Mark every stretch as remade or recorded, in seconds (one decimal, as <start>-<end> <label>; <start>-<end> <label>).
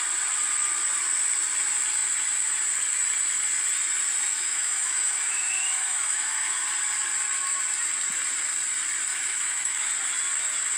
0.0-4.3 recorded; 4.3-6.6 remade; 6.6-9.1 recorded; 9.1-9.9 remade; 9.9-10.8 recorded